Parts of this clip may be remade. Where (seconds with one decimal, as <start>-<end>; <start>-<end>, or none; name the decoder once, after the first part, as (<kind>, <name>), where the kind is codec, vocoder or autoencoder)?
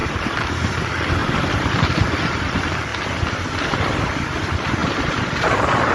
0.0-0.7 (vocoder, BigVGAN v2); 1.2-1.8; 4.8-5.9